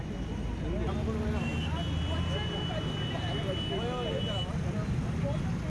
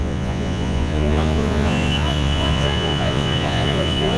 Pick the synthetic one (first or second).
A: second